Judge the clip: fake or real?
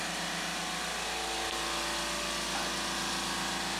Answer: real